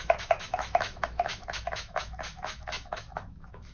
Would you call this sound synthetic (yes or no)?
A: yes